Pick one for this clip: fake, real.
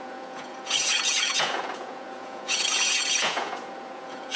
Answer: fake